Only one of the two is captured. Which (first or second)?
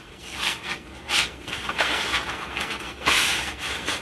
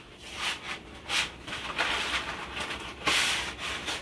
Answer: second